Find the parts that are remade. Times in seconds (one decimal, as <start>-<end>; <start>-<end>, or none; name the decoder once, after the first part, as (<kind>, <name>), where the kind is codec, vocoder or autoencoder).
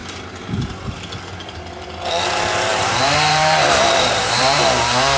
2.7-4.6 (vocoder, BigVGAN v2)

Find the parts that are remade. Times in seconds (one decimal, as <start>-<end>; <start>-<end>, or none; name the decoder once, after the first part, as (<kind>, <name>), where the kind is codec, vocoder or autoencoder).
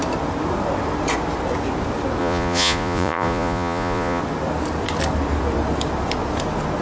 2.2-4.2 (vocoder, Vocos)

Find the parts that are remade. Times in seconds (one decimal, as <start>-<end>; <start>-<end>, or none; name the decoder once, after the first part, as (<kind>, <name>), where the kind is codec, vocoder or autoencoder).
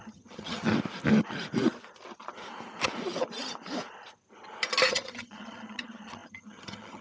0.0-0.7 (vocoder, HiFi-GAN); 4.9-7.0